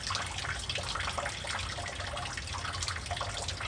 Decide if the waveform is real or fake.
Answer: real